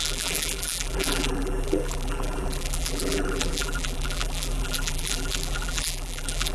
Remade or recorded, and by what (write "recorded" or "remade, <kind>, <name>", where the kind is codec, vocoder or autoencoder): remade, vocoder, BigVGAN v2